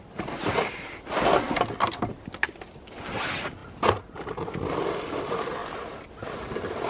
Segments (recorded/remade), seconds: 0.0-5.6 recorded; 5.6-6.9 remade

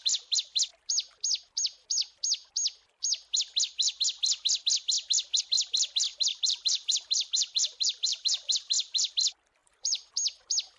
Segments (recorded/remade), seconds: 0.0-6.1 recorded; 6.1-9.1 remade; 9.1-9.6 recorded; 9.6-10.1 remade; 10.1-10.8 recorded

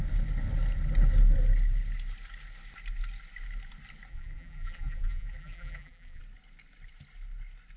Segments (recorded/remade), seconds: 0.0-4.1 recorded; 4.1-6.2 remade; 6.2-7.8 recorded

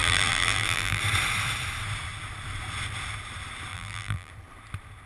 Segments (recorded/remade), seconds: 0.0-1.0 remade; 1.0-3.7 recorded; 3.7-4.3 remade; 4.3-5.1 recorded